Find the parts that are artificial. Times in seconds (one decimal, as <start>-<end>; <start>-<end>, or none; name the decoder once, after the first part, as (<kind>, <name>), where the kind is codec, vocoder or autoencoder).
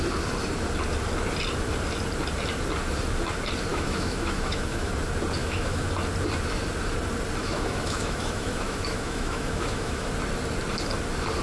3.7-4.9 (autoencoder, DAC-VAE); 5.4-5.9; 7.4-10.1